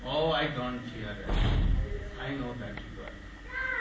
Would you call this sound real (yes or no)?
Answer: yes